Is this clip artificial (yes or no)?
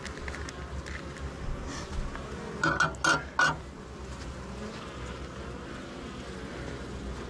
no